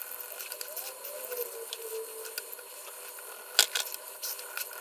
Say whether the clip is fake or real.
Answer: real